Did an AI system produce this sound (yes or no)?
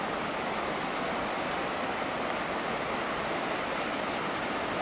no